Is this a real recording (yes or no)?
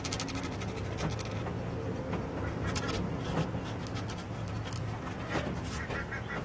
yes